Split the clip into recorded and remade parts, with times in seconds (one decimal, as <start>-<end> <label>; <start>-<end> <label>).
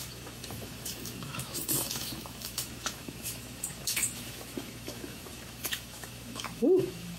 0.0-7.2 remade